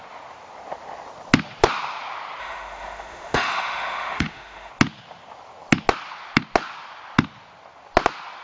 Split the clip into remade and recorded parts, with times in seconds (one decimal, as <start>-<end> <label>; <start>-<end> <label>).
0.0-2.4 recorded; 2.4-4.7 remade; 4.7-8.4 recorded